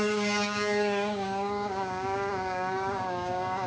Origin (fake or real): fake